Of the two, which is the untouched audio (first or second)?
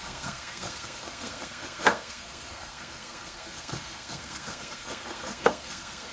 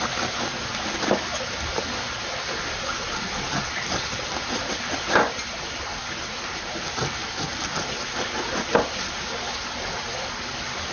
second